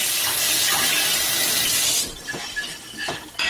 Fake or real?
real